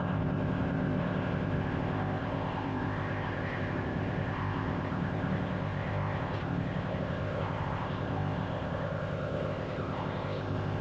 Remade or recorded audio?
remade